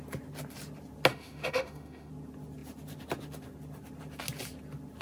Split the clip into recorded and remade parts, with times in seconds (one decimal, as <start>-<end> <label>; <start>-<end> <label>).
0.0-1.1 recorded; 1.1-2.1 remade; 2.1-5.0 recorded